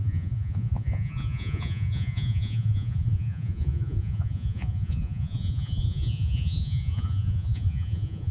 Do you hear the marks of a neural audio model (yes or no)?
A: yes